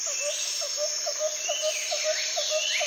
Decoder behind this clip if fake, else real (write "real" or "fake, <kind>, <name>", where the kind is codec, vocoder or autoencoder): real